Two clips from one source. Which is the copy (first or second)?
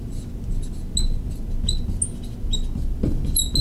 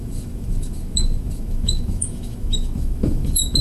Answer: second